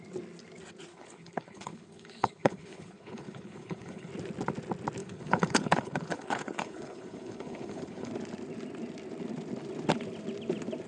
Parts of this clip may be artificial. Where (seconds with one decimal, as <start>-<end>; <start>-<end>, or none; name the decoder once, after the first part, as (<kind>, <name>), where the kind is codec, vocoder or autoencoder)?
0.9-4.1 (codec, HILCodec); 5.0-8.1